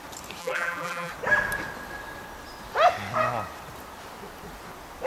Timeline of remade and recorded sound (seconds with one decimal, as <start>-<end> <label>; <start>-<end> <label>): 0.0-0.4 recorded; 0.4-1.1 remade; 1.1-5.1 recorded